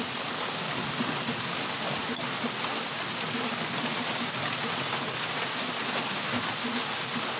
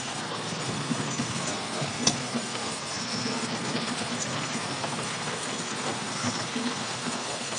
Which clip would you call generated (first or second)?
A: second